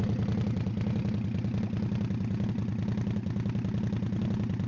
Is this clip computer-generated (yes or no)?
no